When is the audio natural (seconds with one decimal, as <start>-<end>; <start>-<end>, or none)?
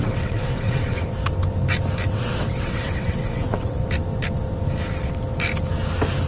1.0-2.1; 3.8-6.3